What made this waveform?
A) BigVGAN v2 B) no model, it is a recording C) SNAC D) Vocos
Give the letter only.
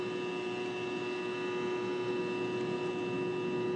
B